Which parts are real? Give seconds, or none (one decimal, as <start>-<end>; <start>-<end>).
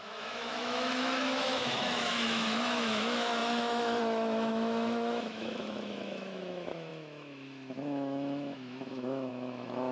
none